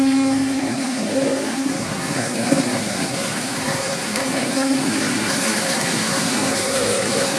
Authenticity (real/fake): fake